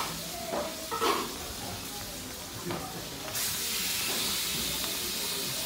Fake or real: real